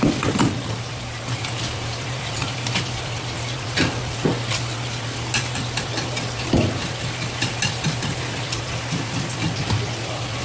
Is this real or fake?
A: fake